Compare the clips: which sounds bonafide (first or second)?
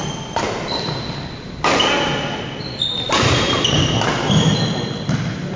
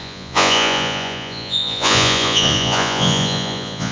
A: first